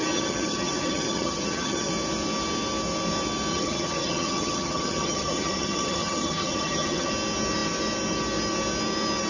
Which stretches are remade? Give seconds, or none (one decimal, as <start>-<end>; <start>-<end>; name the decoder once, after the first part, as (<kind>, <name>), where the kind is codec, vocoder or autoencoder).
0.0-1.9 (vocoder, HiFi-GAN); 3.5-7.1